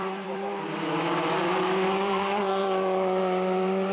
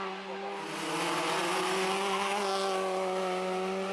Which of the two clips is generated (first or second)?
first